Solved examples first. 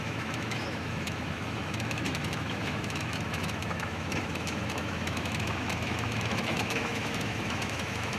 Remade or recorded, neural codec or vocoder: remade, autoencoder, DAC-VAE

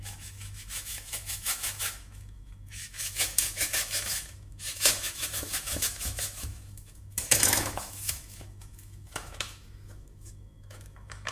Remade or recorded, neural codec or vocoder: remade, autoencoder, DAC-VAE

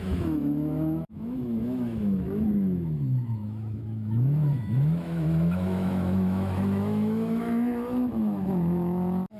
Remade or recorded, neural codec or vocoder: remade, autoencoder, DAC-VAE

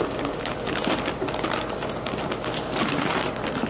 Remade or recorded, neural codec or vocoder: recorded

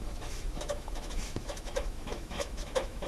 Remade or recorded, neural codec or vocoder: remade, autoencoder, DAC-VAE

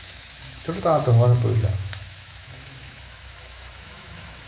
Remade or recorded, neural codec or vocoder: remade, autoencoder, DAC-VAE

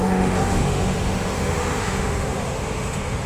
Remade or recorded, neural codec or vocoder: remade, autoencoder, DAC-VAE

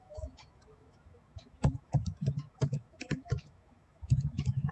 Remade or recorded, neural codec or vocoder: remade, autoencoder, DAC-VAE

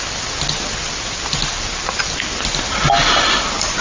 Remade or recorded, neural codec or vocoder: recorded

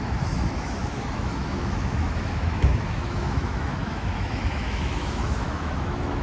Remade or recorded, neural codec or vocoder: remade, autoencoder, DAC-VAE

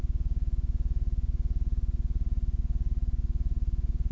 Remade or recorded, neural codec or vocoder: recorded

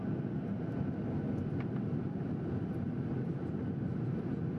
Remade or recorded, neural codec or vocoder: recorded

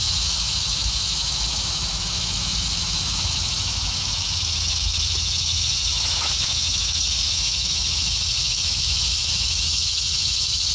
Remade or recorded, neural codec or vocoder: remade, autoencoder, DAC-VAE